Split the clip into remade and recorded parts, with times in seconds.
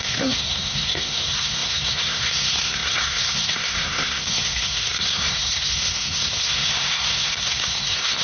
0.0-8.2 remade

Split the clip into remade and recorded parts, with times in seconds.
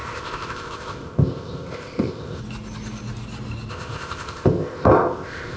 0.0-2.4 remade; 2.4-3.7 recorded; 3.7-5.6 remade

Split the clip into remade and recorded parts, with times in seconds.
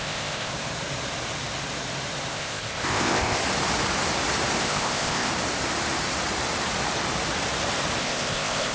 0.0-0.5 remade; 0.5-2.3 recorded; 2.3-3.4 remade; 3.4-4.6 recorded; 4.6-5.3 remade; 5.3-8.0 recorded; 8.0-8.7 remade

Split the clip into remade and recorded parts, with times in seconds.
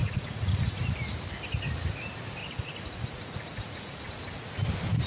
0.0-0.8 remade; 0.8-2.4 recorded; 2.4-4.1 remade; 4.1-5.1 recorded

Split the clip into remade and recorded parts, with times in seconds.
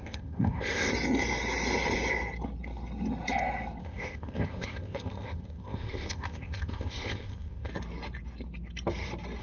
0.0-0.9 remade; 0.9-3.8 recorded; 3.8-7.7 remade; 7.7-9.4 recorded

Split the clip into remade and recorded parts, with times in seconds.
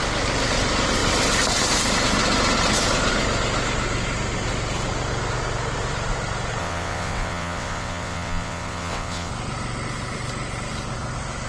0.0-6.6 recorded; 6.6-9.3 remade; 9.3-11.5 recorded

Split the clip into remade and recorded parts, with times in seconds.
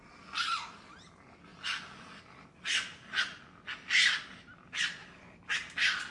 0.0-6.1 recorded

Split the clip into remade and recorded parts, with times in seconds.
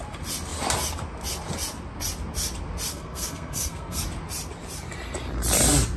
0.0-2.9 recorded; 2.9-4.0 remade; 4.0-6.0 recorded